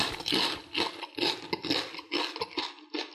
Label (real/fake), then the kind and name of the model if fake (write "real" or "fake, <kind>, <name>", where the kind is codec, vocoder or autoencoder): real